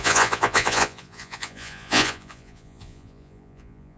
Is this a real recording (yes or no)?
no